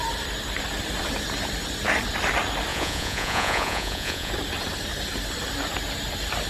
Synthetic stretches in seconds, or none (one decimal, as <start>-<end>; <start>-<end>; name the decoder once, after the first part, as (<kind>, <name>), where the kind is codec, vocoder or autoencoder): 2.7-4.3 (vocoder, Vocos)